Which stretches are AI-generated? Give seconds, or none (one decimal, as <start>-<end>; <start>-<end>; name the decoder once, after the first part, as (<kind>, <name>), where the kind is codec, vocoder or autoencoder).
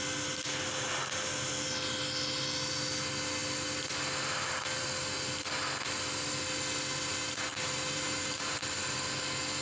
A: 7.5-8.6 (vocoder, BigVGAN v2)